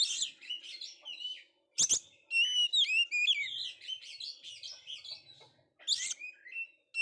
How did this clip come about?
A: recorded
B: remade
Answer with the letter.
A